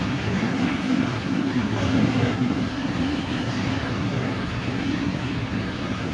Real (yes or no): no